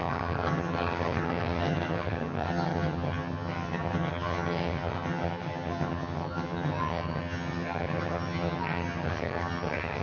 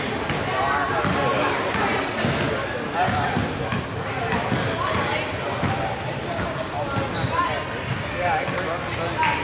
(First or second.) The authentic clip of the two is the second